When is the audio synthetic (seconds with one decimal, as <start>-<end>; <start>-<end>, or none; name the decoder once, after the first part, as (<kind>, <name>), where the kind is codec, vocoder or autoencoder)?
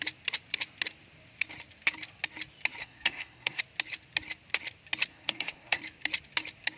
2.8-3.6 (codec, SNAC); 5.1-5.8